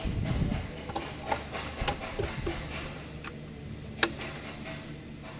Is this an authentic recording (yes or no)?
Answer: yes